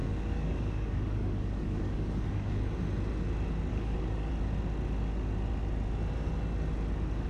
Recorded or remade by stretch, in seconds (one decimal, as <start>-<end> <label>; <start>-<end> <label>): 0.0-2.6 remade; 2.6-3.7 recorded; 3.7-4.3 remade; 4.3-7.3 recorded